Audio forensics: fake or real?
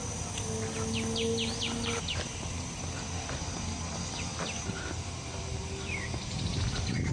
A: real